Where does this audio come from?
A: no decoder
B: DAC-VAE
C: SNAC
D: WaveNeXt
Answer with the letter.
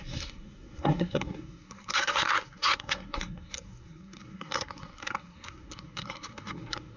C